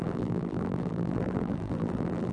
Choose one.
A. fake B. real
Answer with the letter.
A